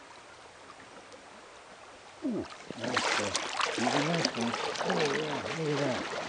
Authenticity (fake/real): real